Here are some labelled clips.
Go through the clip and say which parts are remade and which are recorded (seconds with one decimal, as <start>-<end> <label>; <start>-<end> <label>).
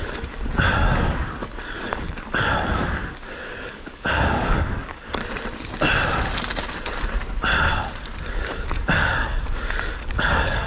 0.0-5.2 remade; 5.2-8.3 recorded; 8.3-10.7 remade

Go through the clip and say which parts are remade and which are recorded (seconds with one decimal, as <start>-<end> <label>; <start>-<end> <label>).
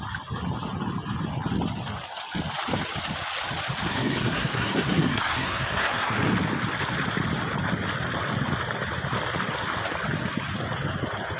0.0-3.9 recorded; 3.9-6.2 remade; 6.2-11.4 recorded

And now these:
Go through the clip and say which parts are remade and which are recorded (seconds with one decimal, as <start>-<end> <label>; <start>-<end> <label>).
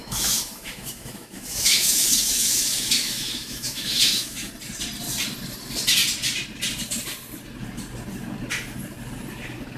0.0-4.5 remade; 4.5-9.8 recorded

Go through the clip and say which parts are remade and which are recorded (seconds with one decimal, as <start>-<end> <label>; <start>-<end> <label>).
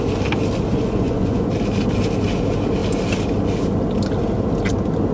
0.0-0.7 recorded; 0.7-1.5 remade; 1.5-5.1 recorded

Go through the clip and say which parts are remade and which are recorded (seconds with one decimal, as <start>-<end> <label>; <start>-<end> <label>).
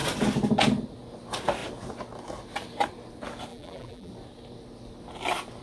0.0-3.5 recorded; 3.5-4.1 remade; 4.1-5.6 recorded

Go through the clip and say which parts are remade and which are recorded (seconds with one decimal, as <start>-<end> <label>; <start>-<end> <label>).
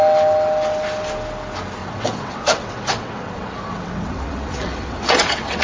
0.0-1.8 recorded; 1.8-5.6 remade